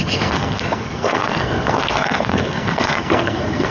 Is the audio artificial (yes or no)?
yes